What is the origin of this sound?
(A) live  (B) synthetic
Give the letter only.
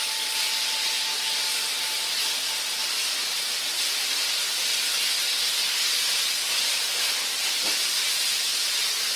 A